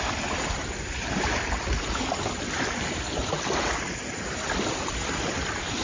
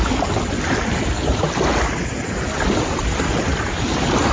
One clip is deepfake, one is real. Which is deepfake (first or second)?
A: first